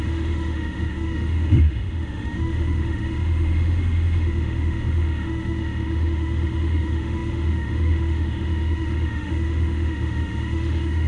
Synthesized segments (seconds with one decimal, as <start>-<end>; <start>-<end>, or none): 0.0-11.1